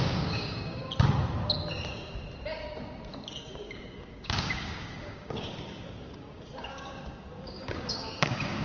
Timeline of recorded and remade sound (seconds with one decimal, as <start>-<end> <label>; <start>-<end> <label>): 0.0-0.8 remade; 0.8-1.8 recorded; 1.8-2.2 remade; 2.2-3.1 recorded; 3.1-8.6 remade